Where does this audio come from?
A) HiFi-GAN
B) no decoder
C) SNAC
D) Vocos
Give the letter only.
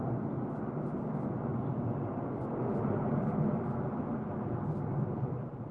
B